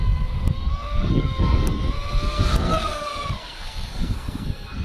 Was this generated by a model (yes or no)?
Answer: yes